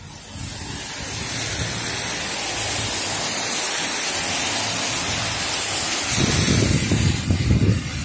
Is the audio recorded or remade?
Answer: recorded